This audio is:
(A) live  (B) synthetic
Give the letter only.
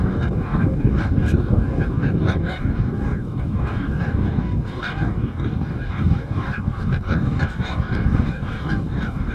B